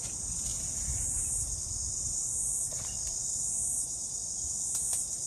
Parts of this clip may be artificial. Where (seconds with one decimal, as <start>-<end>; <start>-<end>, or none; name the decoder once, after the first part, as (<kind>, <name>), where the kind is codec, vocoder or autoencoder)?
0.0-0.5 (vocoder, BigVGAN v2); 3.7-4.2